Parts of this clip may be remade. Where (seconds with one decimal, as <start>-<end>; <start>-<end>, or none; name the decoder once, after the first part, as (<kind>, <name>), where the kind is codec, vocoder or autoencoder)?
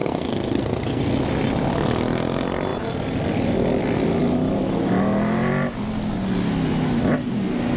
0.0-1.0 (codec, SNAC)